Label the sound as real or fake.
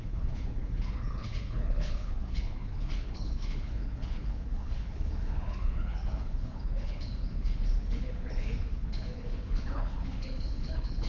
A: fake